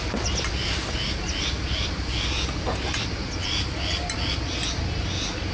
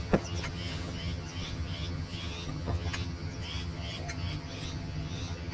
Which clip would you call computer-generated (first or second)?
second